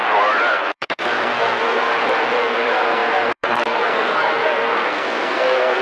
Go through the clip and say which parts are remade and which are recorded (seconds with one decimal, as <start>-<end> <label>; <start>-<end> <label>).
0.0-0.5 recorded; 0.5-1.9 remade; 1.9-2.4 recorded; 2.4-5.8 remade